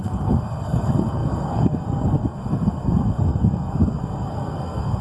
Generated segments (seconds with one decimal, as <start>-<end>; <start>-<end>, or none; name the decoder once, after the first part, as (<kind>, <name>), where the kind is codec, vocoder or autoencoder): 0.0-5.0 (codec, SNAC)